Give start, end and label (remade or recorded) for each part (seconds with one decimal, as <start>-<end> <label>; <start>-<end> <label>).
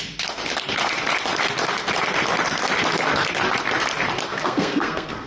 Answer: 0.0-4.3 recorded; 4.3-5.3 remade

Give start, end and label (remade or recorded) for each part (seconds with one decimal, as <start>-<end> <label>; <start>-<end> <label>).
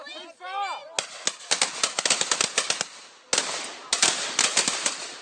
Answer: 0.0-5.2 recorded